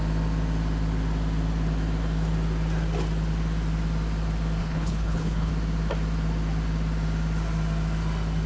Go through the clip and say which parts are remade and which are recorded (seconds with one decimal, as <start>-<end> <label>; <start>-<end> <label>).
0.0-4.6 recorded; 4.6-5.5 remade; 5.5-8.5 recorded